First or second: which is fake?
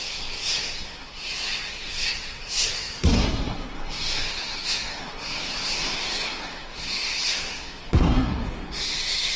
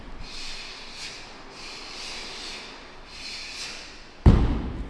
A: first